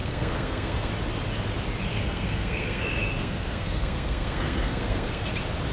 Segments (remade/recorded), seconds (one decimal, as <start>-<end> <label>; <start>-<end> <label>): 0.0-0.9 remade; 0.9-1.9 recorded; 1.9-5.3 remade; 5.3-5.7 recorded